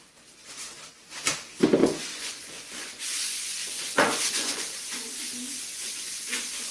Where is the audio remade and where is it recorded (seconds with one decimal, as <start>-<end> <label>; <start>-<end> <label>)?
0.0-1.8 recorded; 1.8-5.1 remade; 5.1-5.7 recorded; 5.7-6.7 remade